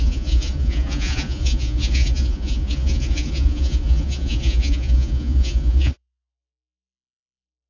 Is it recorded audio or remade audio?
remade